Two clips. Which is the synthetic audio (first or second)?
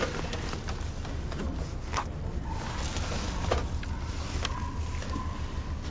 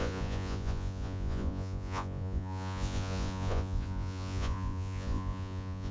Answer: second